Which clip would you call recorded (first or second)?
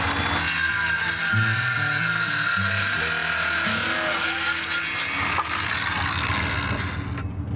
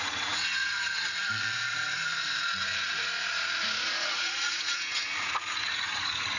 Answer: first